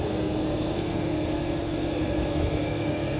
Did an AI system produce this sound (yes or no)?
yes